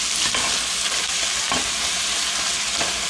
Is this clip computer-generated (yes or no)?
no